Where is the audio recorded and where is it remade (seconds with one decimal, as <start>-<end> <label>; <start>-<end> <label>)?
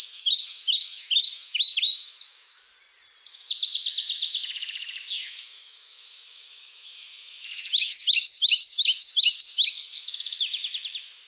0.0-2.6 remade; 2.6-3.3 recorded; 3.3-11.3 remade